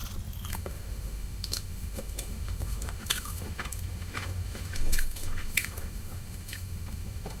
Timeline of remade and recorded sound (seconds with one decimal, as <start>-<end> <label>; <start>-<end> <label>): 0.0-0.5 recorded; 0.5-7.4 remade